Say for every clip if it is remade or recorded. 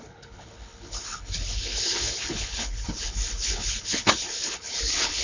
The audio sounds remade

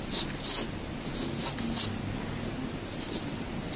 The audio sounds recorded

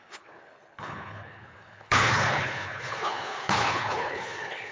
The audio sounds remade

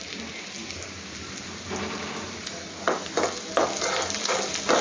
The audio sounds recorded